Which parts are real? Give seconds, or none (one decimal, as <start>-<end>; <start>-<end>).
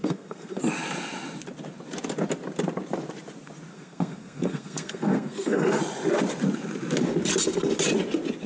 0.6-3.7; 5.8-8.5